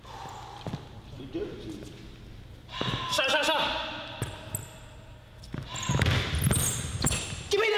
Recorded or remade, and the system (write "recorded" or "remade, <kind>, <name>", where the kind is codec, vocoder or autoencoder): recorded